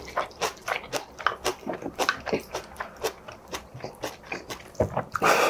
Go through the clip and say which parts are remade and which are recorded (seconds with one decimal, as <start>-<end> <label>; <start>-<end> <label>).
0.0-1.5 recorded; 1.5-4.4 remade; 4.4-5.5 recorded